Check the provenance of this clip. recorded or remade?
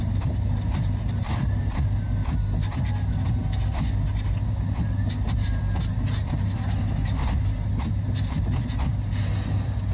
recorded